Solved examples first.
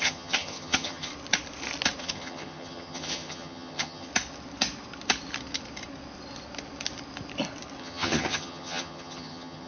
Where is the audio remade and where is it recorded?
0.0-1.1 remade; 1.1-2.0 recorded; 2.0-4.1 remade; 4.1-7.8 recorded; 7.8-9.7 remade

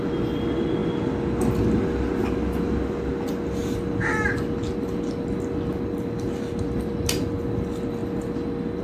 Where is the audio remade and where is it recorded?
0.0-8.8 recorded